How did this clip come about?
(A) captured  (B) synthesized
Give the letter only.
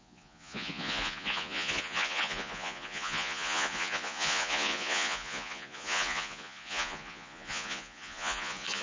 B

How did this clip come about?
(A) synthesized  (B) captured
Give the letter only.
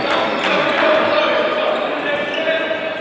B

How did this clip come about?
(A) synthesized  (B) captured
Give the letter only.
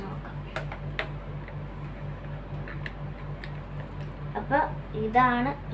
B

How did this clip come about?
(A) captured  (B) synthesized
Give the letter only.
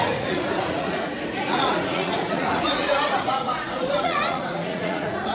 B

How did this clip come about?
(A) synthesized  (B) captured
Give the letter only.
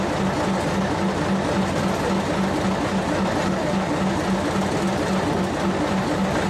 B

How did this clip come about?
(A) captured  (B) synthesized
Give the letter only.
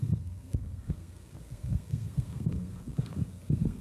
B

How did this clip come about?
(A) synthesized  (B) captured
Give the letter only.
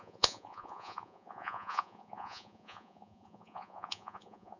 A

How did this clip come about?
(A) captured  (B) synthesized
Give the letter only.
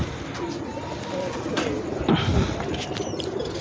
A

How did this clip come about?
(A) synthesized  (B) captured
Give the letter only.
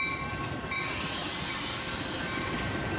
B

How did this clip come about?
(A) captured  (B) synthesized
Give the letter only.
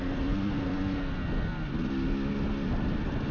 A